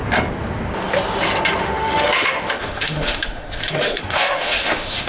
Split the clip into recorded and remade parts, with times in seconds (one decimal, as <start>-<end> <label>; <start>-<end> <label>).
0.0-1.6 recorded; 1.6-5.1 remade

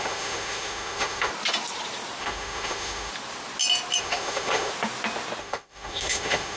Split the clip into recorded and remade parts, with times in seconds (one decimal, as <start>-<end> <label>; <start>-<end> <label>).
0.0-1.3 remade; 1.3-2.2 recorded; 2.2-3.1 remade; 3.1-4.0 recorded; 4.0-4.7 remade; 4.7-5.4 recorded; 5.4-6.6 remade

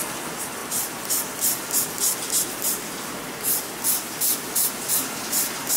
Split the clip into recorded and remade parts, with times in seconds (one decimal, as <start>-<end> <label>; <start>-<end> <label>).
0.0-5.8 recorded

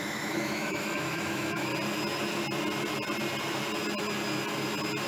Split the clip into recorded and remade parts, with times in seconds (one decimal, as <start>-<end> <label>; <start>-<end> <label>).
0.0-1.7 remade; 1.7-5.1 recorded

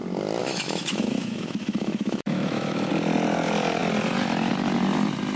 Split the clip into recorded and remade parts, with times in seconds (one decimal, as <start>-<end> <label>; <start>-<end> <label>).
0.0-0.4 recorded; 0.4-2.9 remade; 2.9-5.4 recorded